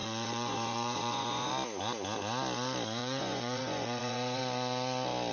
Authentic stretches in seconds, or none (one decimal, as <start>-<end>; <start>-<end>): 1.5-3.0; 4.4-5.3